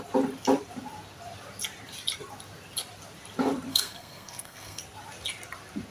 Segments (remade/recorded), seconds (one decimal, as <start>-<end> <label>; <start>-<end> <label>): 0.0-3.7 recorded; 3.7-4.8 remade; 4.8-5.9 recorded